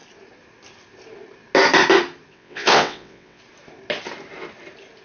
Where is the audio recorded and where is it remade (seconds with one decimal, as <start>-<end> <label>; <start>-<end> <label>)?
0.0-2.3 recorded; 2.3-3.4 remade; 3.4-5.0 recorded